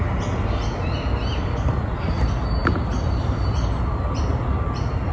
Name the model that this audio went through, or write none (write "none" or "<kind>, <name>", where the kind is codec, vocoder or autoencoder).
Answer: none